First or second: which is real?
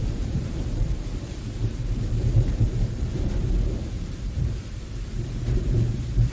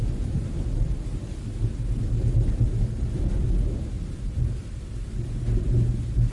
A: second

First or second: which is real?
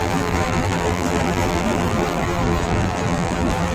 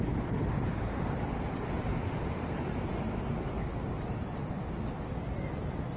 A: second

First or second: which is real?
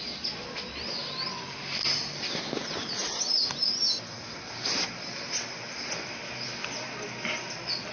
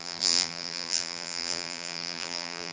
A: first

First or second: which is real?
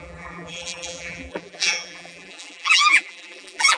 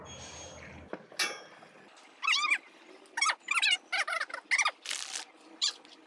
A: second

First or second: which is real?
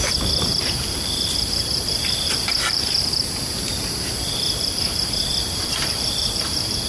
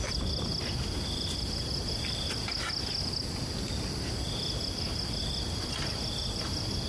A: second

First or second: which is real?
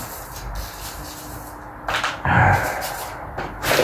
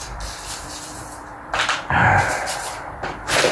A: first